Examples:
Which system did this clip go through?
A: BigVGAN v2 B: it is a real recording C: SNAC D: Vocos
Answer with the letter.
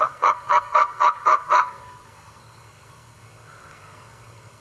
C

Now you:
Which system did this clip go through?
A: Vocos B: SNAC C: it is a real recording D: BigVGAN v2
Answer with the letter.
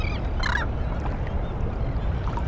C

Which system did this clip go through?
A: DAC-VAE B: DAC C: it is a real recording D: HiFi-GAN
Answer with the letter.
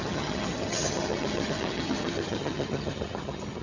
D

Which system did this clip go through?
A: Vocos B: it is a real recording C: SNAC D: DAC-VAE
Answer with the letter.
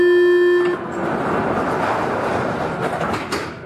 B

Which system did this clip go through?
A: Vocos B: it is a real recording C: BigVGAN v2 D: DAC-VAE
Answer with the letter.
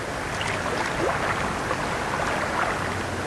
B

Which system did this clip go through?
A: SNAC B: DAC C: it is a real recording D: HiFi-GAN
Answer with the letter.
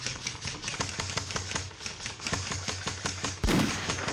B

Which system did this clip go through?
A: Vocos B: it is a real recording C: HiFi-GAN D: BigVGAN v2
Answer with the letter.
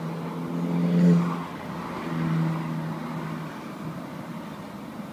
B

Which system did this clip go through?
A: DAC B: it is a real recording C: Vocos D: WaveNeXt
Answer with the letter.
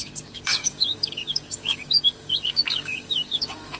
A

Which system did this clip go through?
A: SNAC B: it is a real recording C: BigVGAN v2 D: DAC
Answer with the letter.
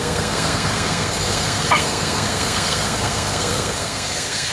A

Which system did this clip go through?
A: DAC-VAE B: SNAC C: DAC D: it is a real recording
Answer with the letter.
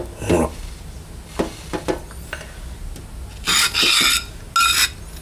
D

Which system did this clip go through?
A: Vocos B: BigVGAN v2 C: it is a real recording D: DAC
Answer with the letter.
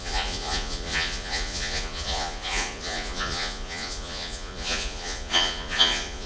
A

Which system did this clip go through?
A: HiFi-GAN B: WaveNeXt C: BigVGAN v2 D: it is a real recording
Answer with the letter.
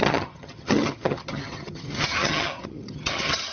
A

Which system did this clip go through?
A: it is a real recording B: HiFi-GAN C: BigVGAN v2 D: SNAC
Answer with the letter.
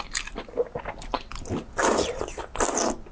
A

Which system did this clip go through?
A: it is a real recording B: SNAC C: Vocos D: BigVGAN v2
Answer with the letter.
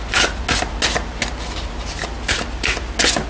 A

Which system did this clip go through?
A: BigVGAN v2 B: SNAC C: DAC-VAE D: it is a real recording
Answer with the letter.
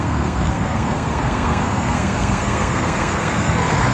B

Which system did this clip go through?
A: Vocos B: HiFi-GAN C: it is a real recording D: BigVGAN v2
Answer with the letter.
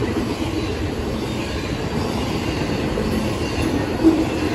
D